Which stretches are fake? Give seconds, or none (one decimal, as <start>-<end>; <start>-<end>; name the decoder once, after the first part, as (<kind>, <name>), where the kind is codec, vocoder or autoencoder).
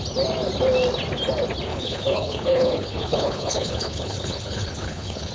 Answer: 1.7-5.3 (codec, HILCodec)